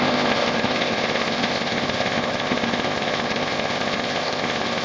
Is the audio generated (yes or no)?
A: yes